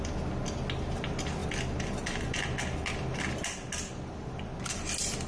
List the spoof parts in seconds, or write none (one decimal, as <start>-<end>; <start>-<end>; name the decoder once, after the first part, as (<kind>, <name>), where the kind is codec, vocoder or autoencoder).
none